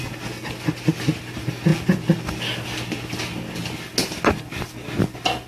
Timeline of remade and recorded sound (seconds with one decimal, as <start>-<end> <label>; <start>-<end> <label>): 0.0-5.5 recorded